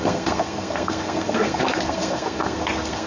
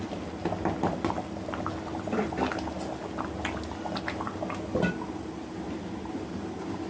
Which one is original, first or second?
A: second